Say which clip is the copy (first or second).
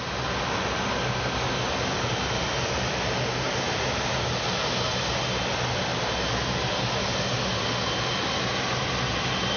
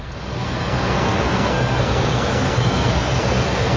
second